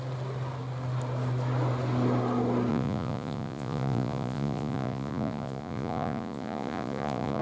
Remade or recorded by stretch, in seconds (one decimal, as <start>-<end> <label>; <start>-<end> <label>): 0.0-2.7 recorded; 2.7-7.4 remade